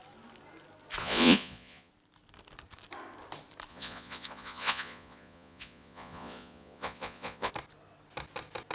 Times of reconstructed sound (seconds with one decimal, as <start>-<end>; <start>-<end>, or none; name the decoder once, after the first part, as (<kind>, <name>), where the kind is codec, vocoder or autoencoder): 1.0-1.9 (vocoder, Vocos); 3.7-7.5